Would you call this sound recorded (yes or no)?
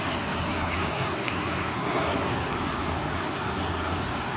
no